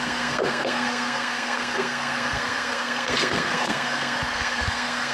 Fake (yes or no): yes